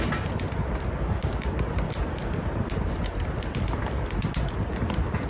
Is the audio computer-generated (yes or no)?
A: no